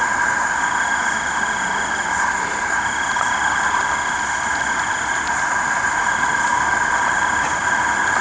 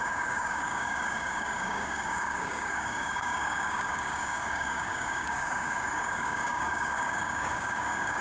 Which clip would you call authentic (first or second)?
first